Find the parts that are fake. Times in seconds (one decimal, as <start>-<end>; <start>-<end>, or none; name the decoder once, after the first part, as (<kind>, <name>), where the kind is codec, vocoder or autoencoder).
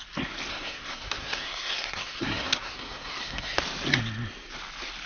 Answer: 0.5-3.6 (codec, SNAC)